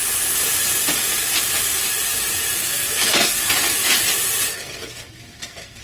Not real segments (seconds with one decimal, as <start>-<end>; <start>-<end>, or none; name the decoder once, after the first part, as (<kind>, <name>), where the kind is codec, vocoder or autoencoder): 2.6-3.4 (codec, SNAC); 4.5-5.8